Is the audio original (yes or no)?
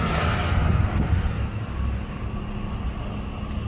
yes